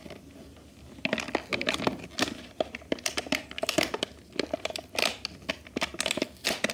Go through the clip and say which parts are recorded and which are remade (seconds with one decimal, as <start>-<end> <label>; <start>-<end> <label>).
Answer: 0.0-6.7 recorded